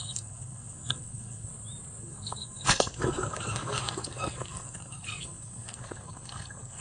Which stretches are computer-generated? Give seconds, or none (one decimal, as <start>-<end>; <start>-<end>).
0.0-1.5; 2.0-6.8